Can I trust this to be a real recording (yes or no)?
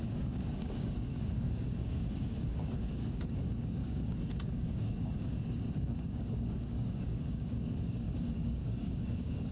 no